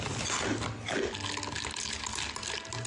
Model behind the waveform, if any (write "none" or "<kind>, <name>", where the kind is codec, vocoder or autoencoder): none